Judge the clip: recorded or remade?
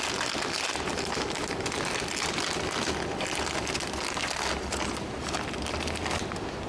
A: recorded